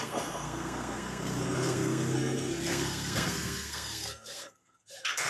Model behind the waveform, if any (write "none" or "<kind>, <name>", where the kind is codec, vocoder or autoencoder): codec, SNAC